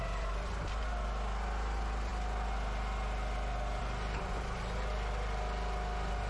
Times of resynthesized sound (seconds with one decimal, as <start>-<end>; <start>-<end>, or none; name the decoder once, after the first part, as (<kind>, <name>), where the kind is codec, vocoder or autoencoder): none